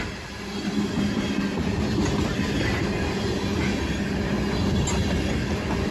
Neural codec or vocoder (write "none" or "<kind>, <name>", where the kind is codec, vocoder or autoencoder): none